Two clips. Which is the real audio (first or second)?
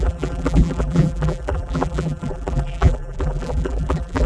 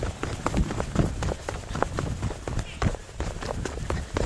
second